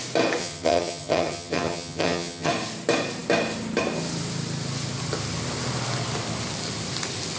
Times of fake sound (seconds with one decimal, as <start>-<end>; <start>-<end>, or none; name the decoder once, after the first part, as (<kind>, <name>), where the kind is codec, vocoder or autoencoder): 0.4-2.5 (vocoder, HiFi-GAN)